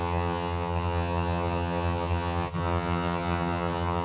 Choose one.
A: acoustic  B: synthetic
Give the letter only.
B